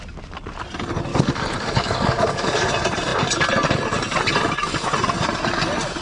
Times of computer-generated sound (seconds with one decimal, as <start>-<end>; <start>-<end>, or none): 1.1-2.7